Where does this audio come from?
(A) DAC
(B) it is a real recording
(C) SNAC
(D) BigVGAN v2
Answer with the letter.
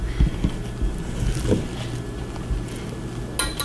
B